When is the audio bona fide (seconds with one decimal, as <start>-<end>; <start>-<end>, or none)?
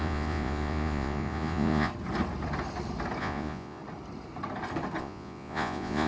1.9-3.2; 3.8-5.0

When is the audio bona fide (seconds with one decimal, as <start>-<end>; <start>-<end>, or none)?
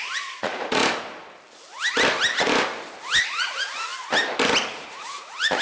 0.8-3.3; 3.9-4.7